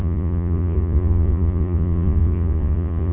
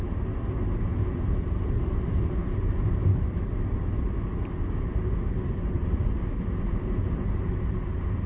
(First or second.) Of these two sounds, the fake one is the first